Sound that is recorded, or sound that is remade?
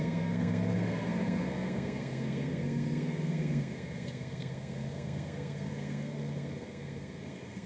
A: remade